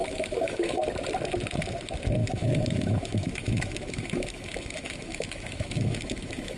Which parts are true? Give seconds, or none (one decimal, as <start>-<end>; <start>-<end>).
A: 0.8-2.2